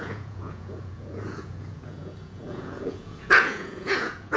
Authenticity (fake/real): fake